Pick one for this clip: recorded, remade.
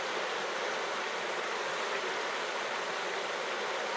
recorded